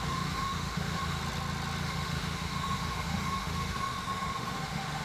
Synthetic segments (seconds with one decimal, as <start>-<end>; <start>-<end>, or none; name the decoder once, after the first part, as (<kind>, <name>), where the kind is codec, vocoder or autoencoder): 0.0-1.2 (autoencoder, DAC-VAE); 1.8-5.0